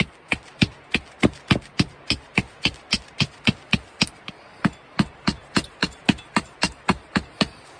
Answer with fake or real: real